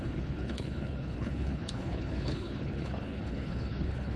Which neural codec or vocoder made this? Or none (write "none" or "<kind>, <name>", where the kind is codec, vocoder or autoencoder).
codec, HILCodec